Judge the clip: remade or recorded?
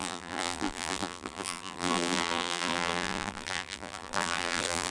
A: remade